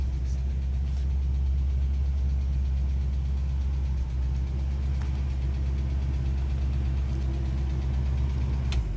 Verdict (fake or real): real